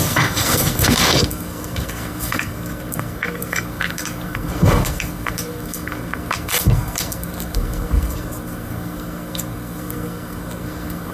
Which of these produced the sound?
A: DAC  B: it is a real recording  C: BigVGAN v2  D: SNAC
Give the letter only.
D